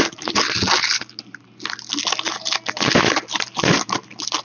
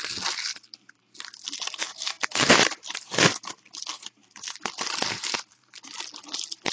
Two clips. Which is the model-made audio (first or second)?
second